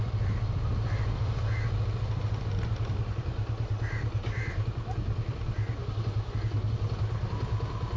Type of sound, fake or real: real